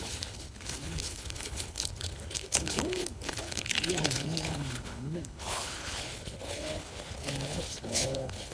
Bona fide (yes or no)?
no